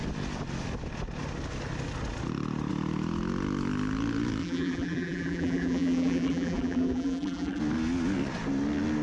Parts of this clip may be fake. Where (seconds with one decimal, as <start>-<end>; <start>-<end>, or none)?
4.4-7.6

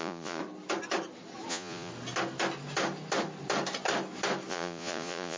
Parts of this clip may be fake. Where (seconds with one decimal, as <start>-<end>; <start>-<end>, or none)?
0.0-0.4; 1.5-1.9; 4.5-5.4

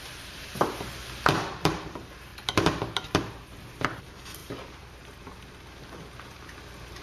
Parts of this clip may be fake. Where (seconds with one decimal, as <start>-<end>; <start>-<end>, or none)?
0.0-2.3; 4.0-7.0

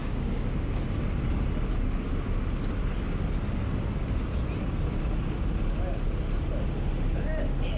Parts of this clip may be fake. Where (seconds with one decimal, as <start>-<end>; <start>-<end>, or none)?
0.0-0.8

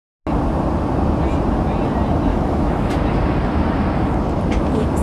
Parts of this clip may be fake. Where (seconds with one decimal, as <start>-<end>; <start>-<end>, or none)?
2.3-2.9

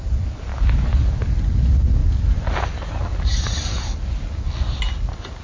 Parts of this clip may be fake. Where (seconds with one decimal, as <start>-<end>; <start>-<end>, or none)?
0.5-1.2

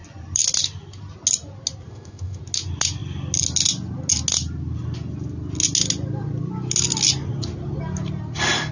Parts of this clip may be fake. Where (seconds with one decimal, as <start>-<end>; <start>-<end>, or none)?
1.9-2.4

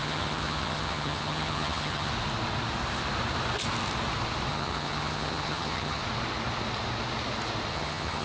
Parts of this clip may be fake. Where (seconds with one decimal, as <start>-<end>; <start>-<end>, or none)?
0.0-2.1; 4.5-6.0; 7.7-8.2